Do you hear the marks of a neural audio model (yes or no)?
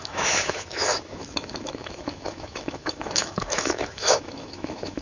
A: yes